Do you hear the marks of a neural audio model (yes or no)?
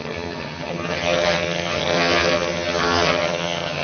yes